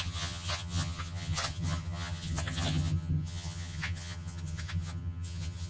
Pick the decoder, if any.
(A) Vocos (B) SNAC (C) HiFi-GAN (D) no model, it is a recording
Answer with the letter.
C